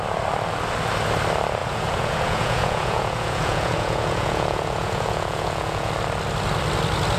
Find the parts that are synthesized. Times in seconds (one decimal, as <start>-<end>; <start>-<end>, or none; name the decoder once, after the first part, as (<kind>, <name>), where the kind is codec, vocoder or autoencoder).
1.6-5.9 (vocoder, Vocos)